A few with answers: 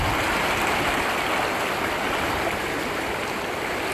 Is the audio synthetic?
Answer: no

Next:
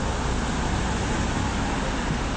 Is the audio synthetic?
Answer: no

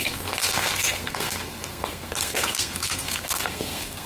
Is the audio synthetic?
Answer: yes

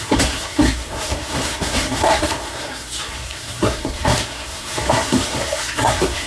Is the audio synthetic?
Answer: yes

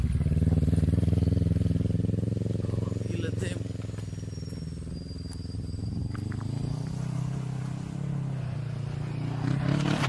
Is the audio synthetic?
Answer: no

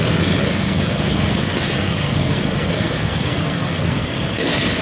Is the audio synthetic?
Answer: yes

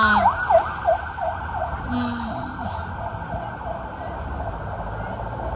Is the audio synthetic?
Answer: no